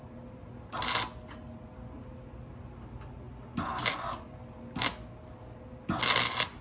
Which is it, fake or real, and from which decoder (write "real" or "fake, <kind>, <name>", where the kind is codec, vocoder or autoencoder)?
real